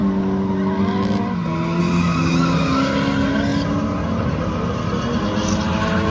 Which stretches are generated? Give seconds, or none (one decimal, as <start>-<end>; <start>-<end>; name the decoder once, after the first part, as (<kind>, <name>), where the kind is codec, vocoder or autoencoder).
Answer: none